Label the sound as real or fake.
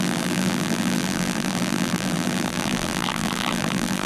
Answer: fake